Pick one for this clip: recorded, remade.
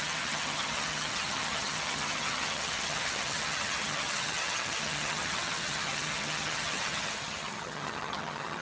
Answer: remade